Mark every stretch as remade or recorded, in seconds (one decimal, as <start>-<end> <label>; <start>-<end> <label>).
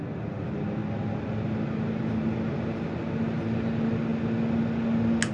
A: 0.0-5.3 recorded